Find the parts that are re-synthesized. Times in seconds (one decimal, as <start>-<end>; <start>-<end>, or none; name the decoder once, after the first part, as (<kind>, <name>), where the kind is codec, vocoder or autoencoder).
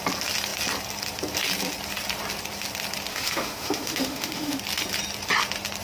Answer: 3.1-4.6 (autoencoder, DAC-VAE)